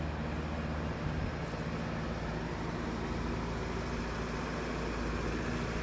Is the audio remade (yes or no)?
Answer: no